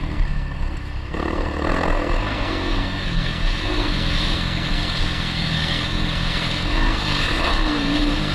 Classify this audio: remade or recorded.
remade